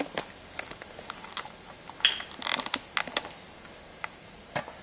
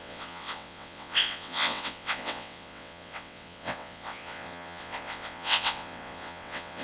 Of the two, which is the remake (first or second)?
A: second